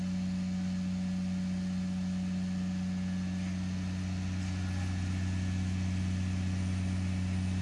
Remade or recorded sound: recorded